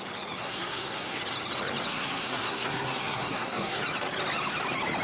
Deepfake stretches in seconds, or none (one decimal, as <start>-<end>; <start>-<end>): 0.4-1.2; 1.9-3.8